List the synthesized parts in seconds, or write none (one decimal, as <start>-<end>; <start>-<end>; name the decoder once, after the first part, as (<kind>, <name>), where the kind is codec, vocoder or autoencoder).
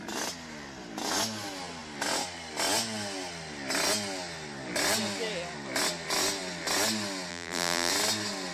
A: 7.3-7.9 (vocoder, BigVGAN v2)